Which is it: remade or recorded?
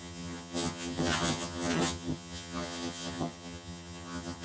remade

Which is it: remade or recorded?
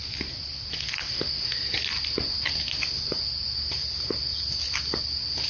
recorded